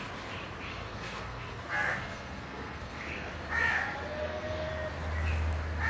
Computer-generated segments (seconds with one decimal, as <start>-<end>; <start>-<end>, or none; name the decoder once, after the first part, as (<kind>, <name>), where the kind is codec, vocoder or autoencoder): 0.7-3.3 (codec, SNAC); 4.2-4.7